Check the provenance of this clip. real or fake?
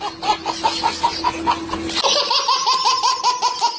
real